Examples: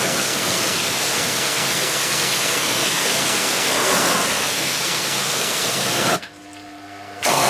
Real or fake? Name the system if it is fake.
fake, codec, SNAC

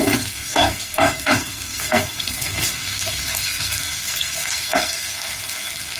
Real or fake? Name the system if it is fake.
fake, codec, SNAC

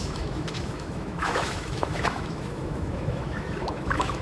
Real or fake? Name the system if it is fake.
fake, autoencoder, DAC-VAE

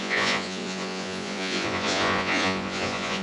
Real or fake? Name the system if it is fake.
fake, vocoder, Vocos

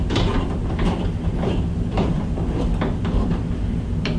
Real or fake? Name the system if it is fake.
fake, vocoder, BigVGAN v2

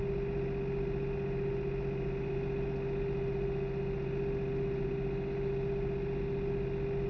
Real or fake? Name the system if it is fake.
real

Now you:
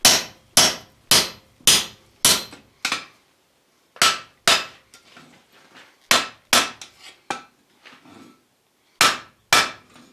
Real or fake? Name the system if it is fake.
real